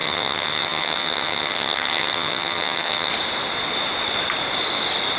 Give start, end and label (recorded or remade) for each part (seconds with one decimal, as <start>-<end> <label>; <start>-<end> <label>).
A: 0.0-3.1 remade; 3.1-5.2 recorded